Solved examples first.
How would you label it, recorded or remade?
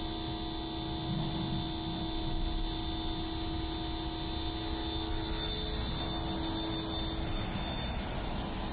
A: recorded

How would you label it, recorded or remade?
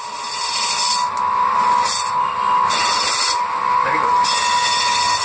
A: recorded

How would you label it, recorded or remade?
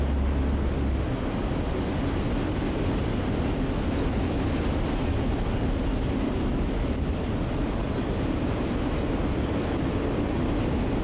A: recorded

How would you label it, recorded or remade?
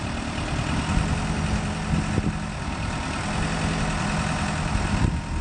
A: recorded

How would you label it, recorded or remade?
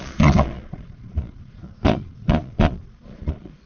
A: remade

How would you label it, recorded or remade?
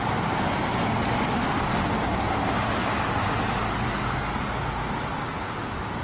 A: recorded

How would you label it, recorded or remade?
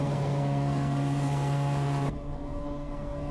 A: remade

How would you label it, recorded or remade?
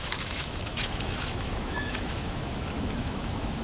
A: remade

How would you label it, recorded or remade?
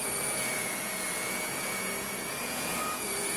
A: remade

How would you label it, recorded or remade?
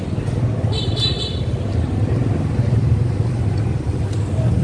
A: recorded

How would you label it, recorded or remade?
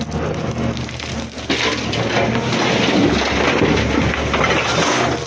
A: recorded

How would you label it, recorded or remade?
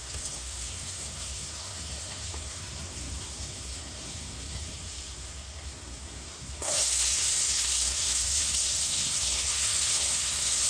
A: remade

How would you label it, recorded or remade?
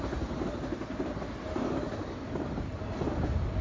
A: recorded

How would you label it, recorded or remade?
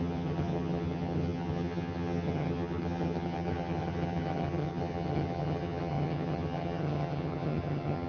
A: remade